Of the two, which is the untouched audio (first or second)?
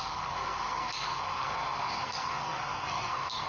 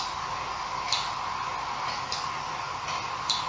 second